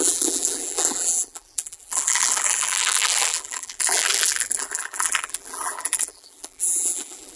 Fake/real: fake